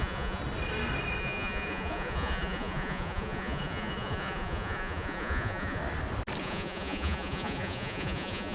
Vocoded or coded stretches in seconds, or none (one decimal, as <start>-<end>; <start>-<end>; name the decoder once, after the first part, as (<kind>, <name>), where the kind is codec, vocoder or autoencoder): 0.0-0.4 (vocoder, Vocos); 1.2-5.8; 6.4-8.5